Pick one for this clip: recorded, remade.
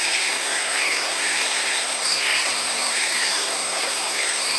remade